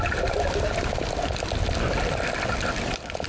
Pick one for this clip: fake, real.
real